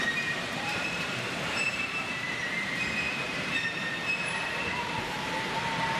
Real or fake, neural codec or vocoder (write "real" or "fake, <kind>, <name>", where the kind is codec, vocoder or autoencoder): fake, vocoder, BigVGAN v2